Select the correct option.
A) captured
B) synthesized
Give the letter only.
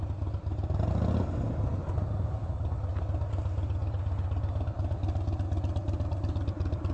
A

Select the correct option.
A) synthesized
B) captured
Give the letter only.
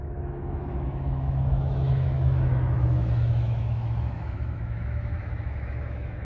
A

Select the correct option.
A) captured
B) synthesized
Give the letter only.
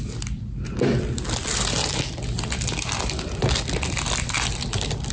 A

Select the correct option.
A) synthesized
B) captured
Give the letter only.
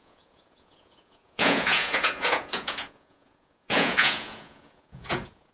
A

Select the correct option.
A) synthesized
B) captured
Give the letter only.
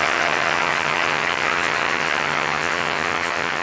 A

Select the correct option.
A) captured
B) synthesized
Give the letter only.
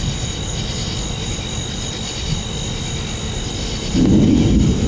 A